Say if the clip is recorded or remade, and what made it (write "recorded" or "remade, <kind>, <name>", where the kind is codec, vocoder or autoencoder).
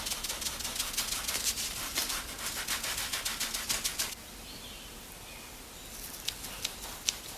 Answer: recorded